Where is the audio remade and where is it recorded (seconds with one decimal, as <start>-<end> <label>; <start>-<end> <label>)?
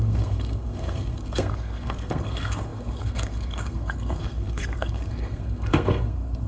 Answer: 0.0-6.5 remade